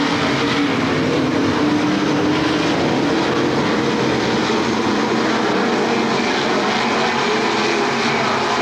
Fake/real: real